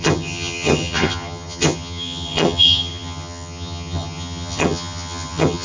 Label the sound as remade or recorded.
remade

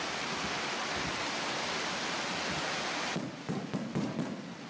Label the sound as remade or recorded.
recorded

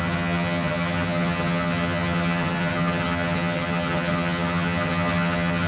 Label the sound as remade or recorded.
remade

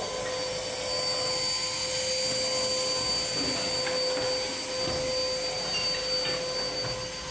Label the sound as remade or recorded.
recorded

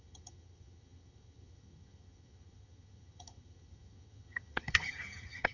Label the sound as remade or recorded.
remade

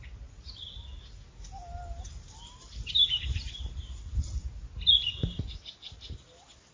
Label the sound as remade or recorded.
recorded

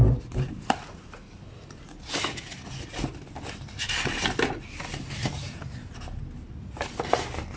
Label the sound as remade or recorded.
recorded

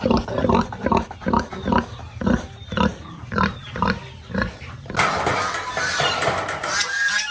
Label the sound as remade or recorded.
recorded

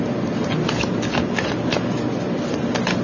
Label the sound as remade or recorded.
recorded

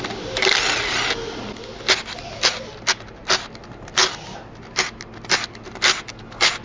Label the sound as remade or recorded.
recorded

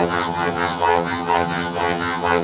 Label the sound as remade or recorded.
remade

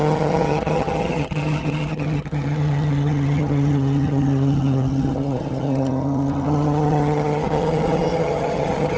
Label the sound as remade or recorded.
remade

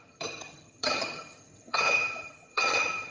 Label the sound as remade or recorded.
remade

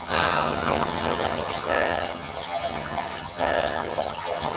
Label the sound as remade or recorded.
remade